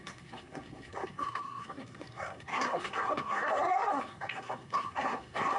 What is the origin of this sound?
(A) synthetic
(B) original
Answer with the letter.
A